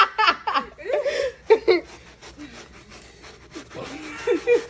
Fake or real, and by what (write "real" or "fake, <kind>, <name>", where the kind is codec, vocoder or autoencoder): real